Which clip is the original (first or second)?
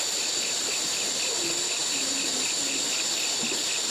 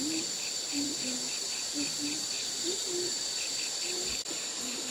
first